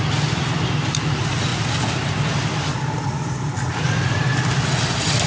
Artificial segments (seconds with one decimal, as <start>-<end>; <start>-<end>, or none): none